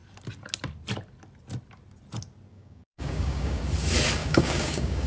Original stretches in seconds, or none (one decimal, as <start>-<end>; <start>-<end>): 0.0-2.5; 3.6-4.2